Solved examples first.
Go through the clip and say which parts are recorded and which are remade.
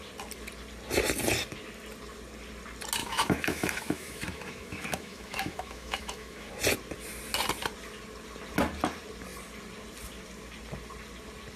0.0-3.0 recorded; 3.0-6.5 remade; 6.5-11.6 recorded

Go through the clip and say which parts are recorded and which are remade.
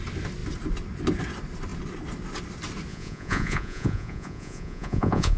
0.0-2.9 recorded; 2.9-5.4 remade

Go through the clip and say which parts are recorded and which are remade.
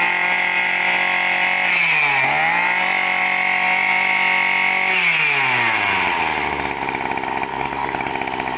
0.0-7.5 recorded; 7.5-8.1 remade; 8.1-8.6 recorded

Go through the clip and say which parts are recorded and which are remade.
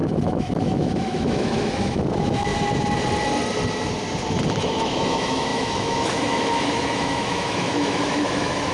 0.0-2.5 remade; 2.5-4.5 recorded; 4.5-8.7 remade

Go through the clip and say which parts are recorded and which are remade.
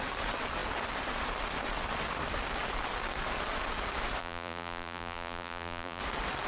0.0-4.2 recorded; 4.2-6.0 remade; 6.0-6.5 recorded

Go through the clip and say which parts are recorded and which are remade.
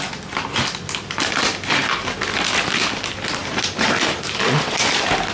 0.0-3.4 recorded; 3.4-4.4 remade; 4.4-5.3 recorded